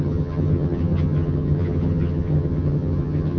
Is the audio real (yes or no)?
no